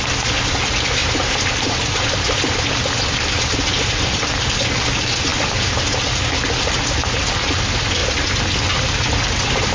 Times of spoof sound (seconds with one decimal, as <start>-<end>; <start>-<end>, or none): 1.0-2.8